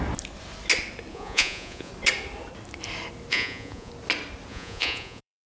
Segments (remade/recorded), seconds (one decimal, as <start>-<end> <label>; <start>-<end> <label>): 0.0-1.1 recorded; 1.1-1.9 remade; 1.9-3.3 recorded; 3.3-3.9 remade; 3.9-4.5 recorded; 4.5-5.5 remade